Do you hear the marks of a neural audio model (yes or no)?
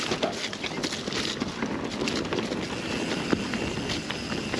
no